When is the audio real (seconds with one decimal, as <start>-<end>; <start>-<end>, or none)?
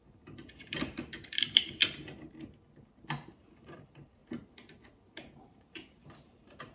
1.8-3.5; 4.2-5.4